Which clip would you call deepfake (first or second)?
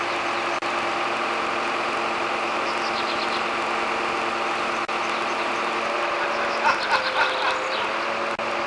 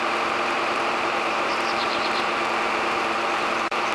second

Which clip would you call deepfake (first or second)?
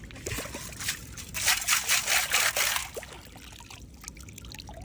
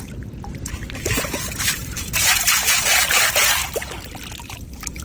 second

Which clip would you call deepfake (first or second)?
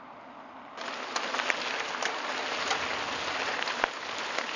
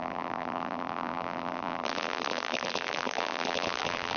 second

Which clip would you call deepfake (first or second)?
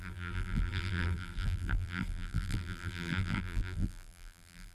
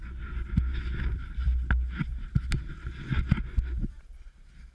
first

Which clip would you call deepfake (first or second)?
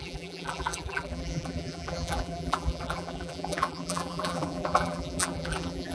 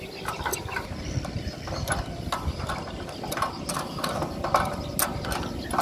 first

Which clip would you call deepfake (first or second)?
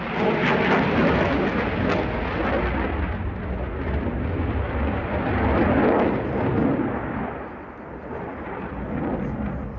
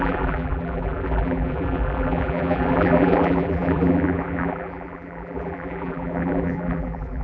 second